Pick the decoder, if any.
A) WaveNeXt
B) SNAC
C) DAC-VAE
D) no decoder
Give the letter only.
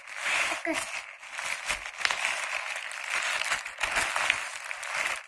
D